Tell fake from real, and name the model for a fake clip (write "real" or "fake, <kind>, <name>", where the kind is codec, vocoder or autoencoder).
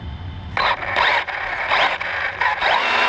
real